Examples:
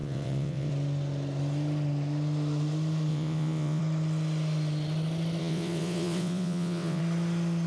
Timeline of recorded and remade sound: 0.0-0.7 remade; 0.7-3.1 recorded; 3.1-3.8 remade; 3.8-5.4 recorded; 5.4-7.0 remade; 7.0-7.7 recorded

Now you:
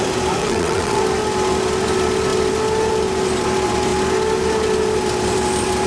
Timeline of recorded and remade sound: 0.0-0.4 recorded; 0.4-1.0 remade; 1.0-5.9 recorded

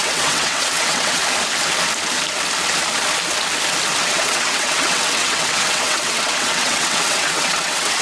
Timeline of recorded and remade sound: 0.0-1.2 remade; 1.2-4.0 recorded; 4.0-8.0 remade

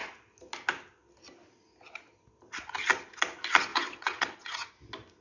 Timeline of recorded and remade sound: 0.0-3.7 recorded; 3.7-4.7 remade; 4.7-5.2 recorded

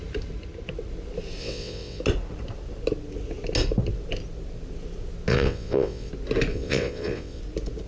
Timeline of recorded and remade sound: 0.0-1.4 recorded; 1.4-2.0 remade; 2.0-5.3 recorded; 5.3-6.1 remade; 6.1-6.5 recorded; 6.5-7.4 remade; 7.4-7.9 recorded

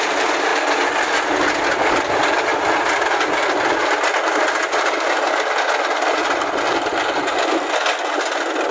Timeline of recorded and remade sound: 0.0-8.7 recorded

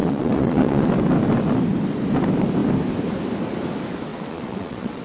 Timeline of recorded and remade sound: 0.0-0.9 remade; 0.9-4.1 recorded; 4.1-5.0 remade

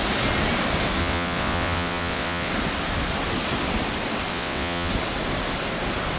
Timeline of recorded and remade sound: 0.0-1.0 recorded; 1.0-2.5 remade; 2.5-4.3 recorded; 4.3-4.9 remade; 4.9-6.2 recorded